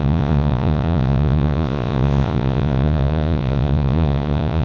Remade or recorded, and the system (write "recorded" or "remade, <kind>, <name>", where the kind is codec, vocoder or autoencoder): remade, vocoder, Vocos